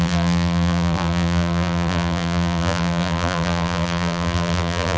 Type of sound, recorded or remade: remade